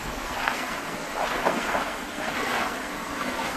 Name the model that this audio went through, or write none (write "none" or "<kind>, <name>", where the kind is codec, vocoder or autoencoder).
codec, SNAC